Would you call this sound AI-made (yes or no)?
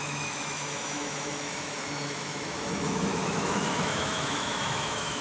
yes